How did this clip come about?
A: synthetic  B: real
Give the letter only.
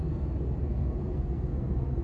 A